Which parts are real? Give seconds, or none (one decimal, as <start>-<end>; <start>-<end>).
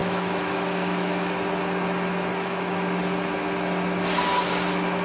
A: 1.3-2.3; 3.0-5.0